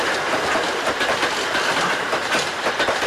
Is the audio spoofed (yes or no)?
no